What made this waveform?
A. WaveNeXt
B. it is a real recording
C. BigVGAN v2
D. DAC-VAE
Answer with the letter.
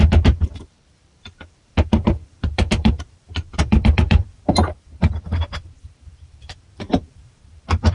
C